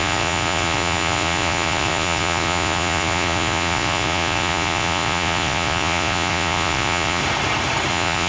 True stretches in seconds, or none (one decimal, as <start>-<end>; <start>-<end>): 7.2-7.9